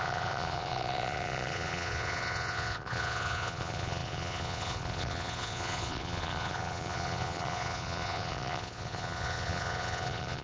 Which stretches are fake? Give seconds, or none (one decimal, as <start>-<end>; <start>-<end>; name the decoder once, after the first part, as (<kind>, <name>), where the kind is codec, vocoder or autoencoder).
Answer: 0.0-10.4 (vocoder, Vocos)